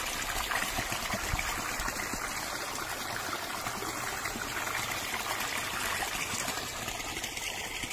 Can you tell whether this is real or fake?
real